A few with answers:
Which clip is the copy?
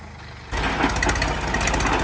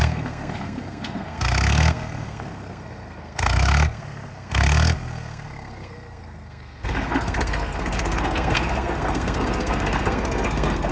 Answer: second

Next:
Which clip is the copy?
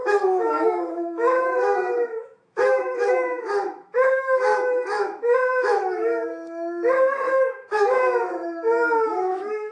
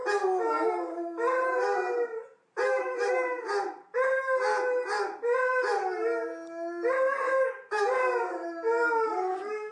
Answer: first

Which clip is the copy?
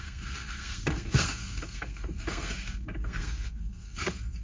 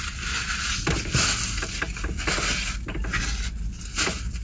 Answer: first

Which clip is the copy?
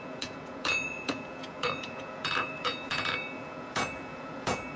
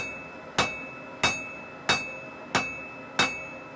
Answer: first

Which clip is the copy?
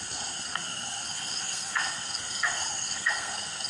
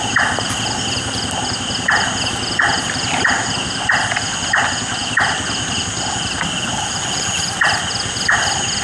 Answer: first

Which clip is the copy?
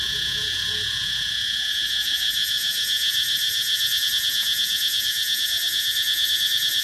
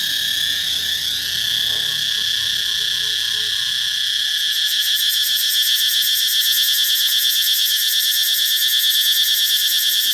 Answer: first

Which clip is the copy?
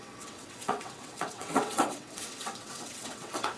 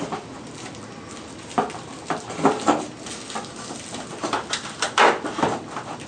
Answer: first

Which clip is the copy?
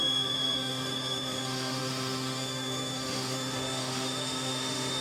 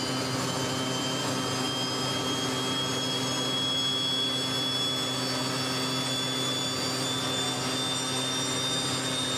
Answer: first